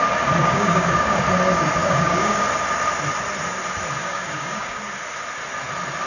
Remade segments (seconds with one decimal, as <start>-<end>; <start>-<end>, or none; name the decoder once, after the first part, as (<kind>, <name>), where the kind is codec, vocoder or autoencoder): 0.4-1.2 (codec, DAC); 1.8-2.4; 4.0-4.8